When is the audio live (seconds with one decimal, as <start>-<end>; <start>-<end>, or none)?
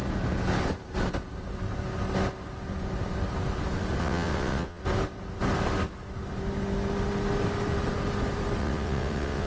0.0-4.0; 4.8-8.6